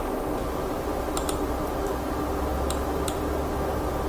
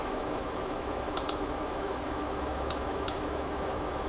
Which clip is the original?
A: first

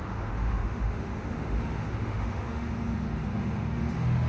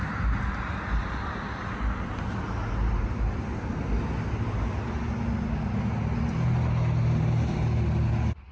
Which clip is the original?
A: second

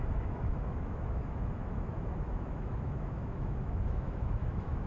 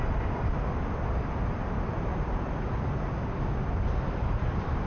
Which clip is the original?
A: second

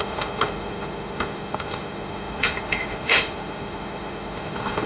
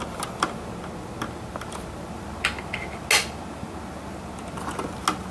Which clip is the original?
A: second